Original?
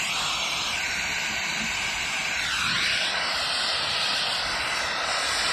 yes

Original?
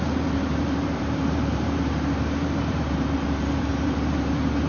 no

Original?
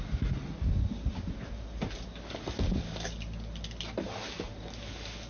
yes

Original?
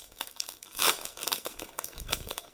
no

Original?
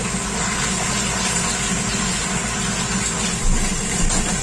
yes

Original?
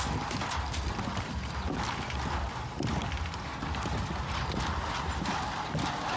yes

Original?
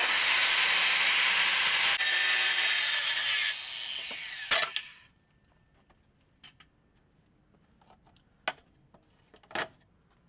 yes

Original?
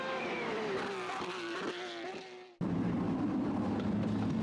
no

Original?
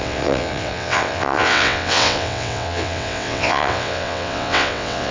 no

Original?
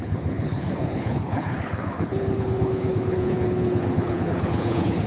no